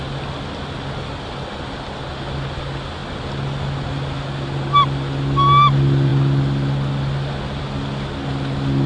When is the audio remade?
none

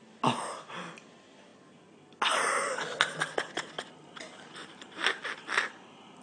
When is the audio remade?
none

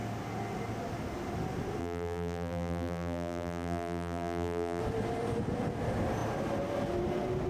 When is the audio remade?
1.8-4.8 (vocoder, BigVGAN v2)

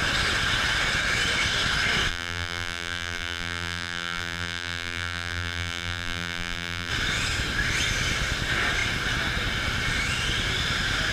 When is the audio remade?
2.1-6.9 (vocoder, BigVGAN v2)